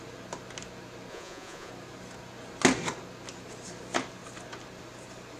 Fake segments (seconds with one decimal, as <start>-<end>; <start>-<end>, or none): 1.1-1.7